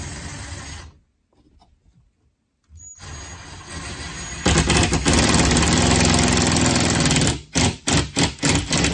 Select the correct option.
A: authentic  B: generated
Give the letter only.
A